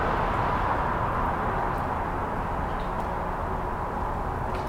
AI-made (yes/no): no